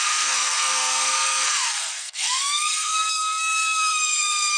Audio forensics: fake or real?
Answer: fake